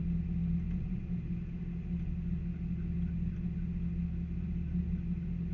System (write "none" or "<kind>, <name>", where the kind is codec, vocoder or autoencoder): none